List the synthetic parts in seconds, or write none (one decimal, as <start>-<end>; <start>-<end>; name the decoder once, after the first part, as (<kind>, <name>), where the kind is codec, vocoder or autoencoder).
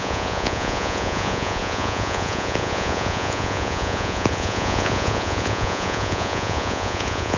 0.0-7.4 (vocoder, Vocos)